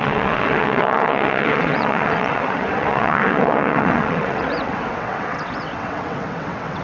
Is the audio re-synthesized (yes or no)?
yes